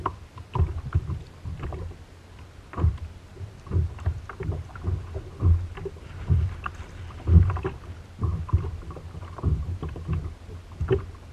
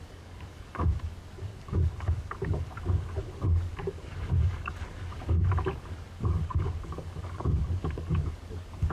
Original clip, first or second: first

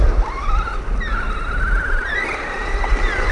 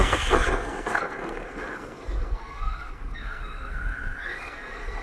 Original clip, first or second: first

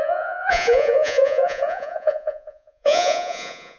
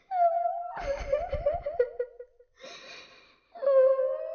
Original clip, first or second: second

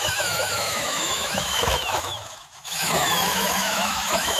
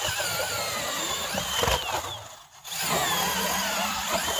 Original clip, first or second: second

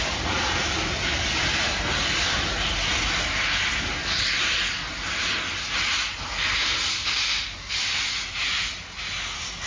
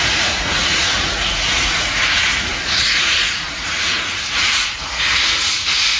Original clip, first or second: first